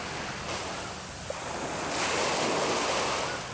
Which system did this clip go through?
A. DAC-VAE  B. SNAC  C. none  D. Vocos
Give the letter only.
C